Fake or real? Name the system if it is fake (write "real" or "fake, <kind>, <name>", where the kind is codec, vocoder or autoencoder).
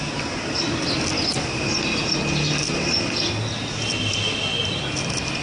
real